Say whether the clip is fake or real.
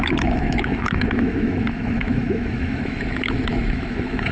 fake